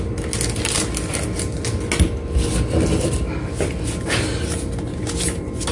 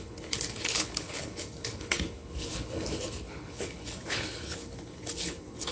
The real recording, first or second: first